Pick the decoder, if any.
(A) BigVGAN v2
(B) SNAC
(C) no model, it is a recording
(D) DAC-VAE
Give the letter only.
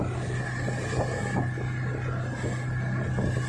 C